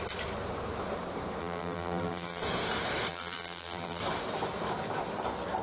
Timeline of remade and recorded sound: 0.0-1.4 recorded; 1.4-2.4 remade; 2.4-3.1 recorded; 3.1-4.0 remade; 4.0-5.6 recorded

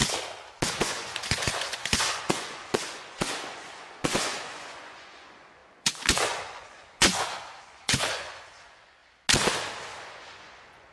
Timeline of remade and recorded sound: 0.0-0.7 recorded; 0.7-9.0 remade; 9.0-10.0 recorded; 10.0-10.9 remade

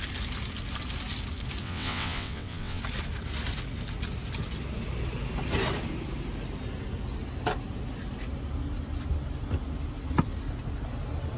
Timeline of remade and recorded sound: 0.0-1.6 recorded; 1.6-2.8 remade; 2.8-11.4 recorded

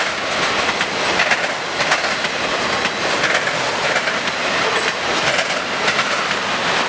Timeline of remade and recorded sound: 0.0-6.9 recorded

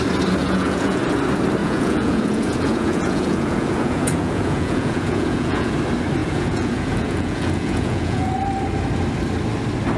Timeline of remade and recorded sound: 0.0-0.4 recorded; 0.4-1.0 remade; 1.0-1.6 recorded; 1.6-5.7 remade; 5.7-6.2 recorded; 6.2-8.3 remade; 8.3-10.0 recorded